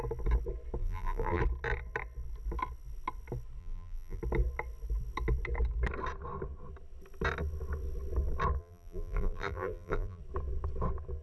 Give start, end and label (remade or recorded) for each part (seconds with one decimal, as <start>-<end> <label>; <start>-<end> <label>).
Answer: 0.0-0.8 recorded; 0.8-1.4 remade; 1.4-3.6 recorded; 3.6-4.2 remade; 4.2-8.6 recorded; 8.6-10.2 remade; 10.2-11.2 recorded